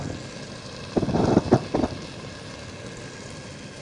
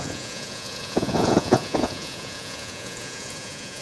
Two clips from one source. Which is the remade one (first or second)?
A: second